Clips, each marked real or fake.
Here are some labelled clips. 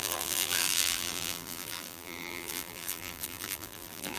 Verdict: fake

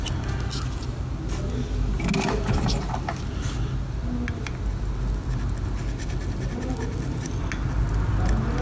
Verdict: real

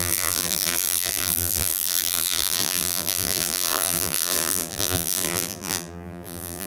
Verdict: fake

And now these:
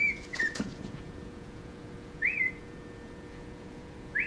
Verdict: fake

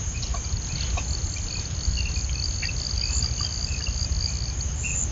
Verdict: real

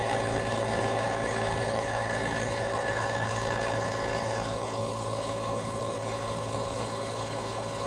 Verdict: fake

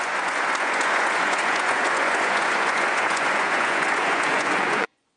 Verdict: fake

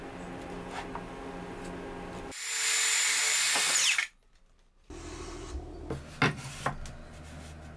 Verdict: real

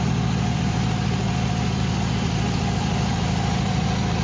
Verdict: fake